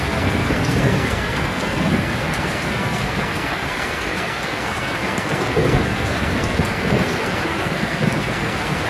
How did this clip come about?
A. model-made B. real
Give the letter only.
A